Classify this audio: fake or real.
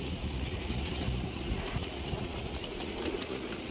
fake